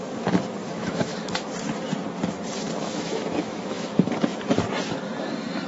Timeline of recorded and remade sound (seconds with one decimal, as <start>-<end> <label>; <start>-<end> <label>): 0.0-0.6 recorded; 0.6-1.5 remade; 1.5-2.6 recorded; 2.6-4.2 remade; 4.2-5.7 recorded